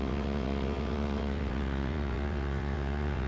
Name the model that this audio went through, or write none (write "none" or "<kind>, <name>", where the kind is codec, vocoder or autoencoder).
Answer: vocoder, WaveNeXt